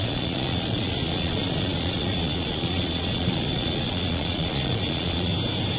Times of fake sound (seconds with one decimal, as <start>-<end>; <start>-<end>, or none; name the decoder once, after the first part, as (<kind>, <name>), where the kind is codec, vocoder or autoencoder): 0.0-5.3 (vocoder, Vocos)